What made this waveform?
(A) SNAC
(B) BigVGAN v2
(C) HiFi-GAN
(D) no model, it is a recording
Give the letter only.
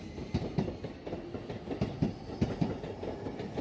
D